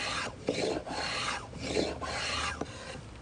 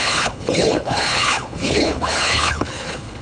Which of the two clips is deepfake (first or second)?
second